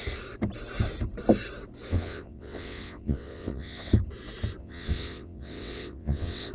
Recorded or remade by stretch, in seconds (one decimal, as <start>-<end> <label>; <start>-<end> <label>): 0.0-1.9 recorded; 1.9-3.9 remade; 3.9-4.6 recorded; 4.6-6.5 remade